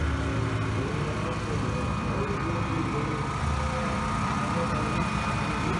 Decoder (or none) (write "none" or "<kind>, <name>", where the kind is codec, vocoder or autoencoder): none